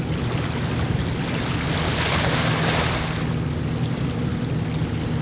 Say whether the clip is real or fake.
real